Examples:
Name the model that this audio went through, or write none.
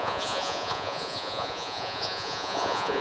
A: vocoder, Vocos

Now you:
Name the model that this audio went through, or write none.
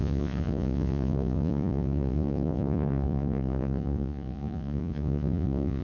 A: vocoder, Vocos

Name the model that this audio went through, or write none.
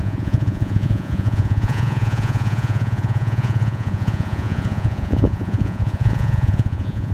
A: vocoder, Vocos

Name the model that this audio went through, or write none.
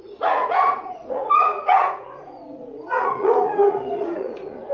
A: vocoder, Vocos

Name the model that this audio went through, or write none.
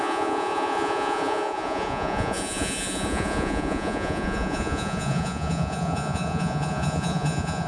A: vocoder, Vocos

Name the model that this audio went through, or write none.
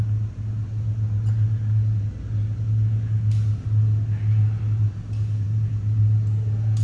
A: none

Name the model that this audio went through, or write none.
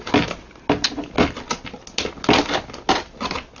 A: none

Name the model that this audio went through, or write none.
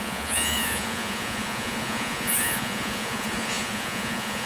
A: vocoder, Vocos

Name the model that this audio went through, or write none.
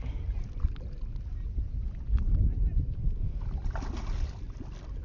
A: none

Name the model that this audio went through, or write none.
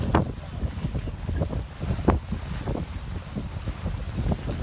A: none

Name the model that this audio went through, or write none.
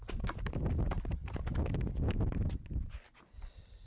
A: none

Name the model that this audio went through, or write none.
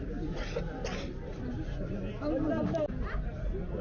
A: none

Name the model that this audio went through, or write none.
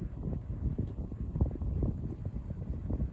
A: none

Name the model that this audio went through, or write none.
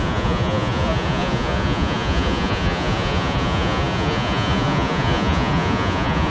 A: vocoder, Vocos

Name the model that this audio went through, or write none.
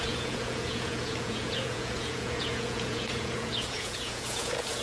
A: vocoder, Vocos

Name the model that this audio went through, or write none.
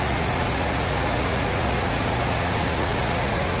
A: vocoder, Vocos